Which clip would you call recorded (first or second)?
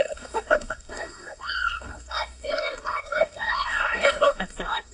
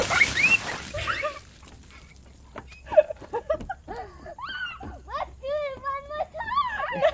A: second